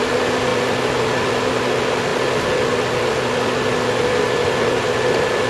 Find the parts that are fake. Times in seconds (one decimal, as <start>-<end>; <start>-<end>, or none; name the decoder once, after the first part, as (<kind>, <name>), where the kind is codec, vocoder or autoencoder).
none